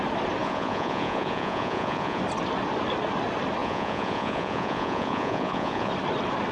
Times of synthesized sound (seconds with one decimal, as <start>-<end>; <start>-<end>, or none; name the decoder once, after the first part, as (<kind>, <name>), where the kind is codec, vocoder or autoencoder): 0.4-2.2 (vocoder, Vocos); 3.6-5.9